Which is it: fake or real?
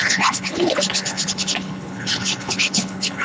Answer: fake